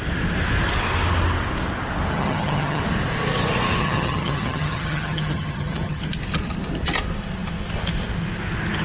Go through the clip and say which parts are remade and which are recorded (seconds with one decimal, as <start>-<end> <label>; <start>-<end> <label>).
0.0-2.1 recorded; 2.1-2.8 remade; 2.8-3.8 recorded; 3.8-6.0 remade; 6.0-8.8 recorded